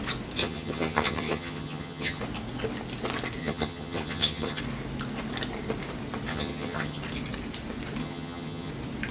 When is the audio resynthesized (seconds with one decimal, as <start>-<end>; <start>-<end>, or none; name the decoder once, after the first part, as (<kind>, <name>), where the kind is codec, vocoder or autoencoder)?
0.4-2.2 (vocoder, HiFi-GAN); 3.4-4.6; 6.3-7.0; 8.0-8.7